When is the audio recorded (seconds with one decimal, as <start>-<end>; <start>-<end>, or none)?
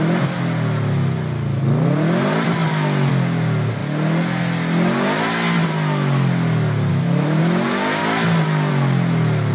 0.0-6.9; 7.4-9.5